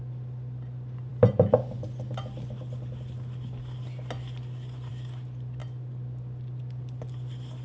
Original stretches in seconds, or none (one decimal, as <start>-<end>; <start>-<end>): 0.0-7.6